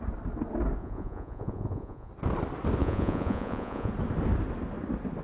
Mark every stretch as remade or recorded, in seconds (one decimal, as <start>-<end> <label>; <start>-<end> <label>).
0.0-0.8 recorded; 0.8-2.1 remade; 2.1-2.8 recorded; 2.8-3.9 remade; 3.9-5.2 recorded